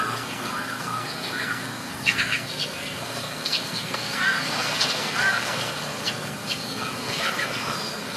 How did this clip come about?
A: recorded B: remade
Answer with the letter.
B